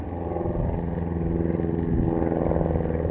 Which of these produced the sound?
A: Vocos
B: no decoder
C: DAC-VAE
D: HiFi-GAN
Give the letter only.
B